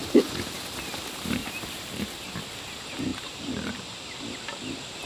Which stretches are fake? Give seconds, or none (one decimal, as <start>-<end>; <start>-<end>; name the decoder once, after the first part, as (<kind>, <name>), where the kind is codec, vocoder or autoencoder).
0.0-0.6 (vocoder, BigVGAN v2); 3.1-4.2